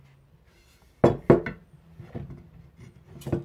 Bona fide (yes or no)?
yes